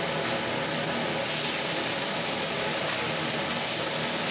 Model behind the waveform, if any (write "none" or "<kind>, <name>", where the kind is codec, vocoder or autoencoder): none